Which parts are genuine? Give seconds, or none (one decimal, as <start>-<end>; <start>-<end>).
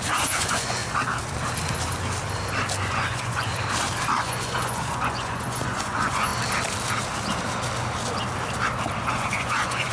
0.8-2.8; 3.5-4.2; 6.3-9.1